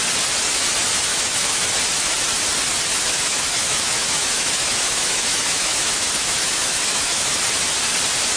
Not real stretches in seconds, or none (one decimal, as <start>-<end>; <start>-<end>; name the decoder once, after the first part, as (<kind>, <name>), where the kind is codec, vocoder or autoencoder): 1.1-1.6 (autoencoder, DAC-VAE); 2.9-7.4